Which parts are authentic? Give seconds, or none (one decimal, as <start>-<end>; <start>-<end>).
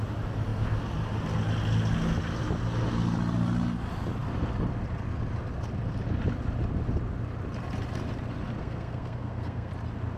0.0-8.6; 9.7-10.2